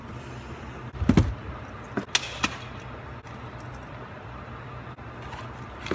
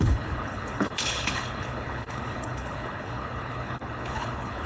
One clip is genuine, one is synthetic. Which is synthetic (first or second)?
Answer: second